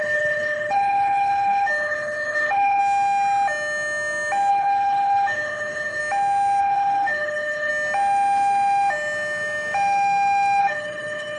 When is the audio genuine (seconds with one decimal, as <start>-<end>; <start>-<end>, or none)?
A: 2.8-4.5; 6.0-6.6; 7.7-10.6